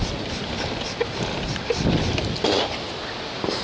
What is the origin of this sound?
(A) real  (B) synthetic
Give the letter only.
A